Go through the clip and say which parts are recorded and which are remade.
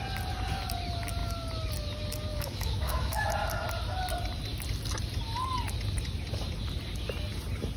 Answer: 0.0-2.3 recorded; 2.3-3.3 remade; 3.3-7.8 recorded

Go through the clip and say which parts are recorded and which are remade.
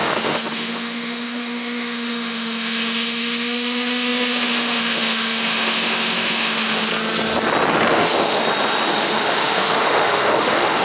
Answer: 0.0-6.9 remade; 6.9-7.9 recorded; 7.9-8.4 remade; 8.4-8.9 recorded; 8.9-10.8 remade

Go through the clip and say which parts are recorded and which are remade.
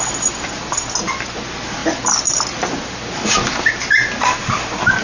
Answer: 0.0-5.0 recorded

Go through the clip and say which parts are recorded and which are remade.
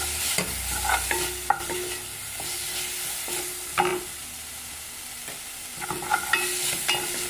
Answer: 0.0-7.3 recorded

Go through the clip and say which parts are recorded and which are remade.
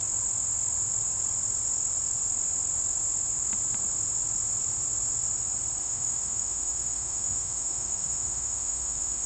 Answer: 0.0-5.8 recorded; 5.8-9.3 remade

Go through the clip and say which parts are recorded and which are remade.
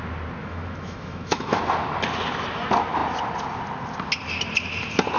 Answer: 0.0-0.4 recorded; 0.4-1.6 remade; 1.6-5.2 recorded